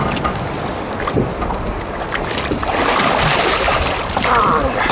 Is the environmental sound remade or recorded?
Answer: recorded